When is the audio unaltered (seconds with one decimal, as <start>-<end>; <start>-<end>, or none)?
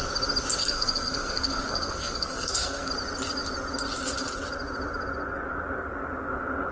0.0-0.6; 2.9-6.7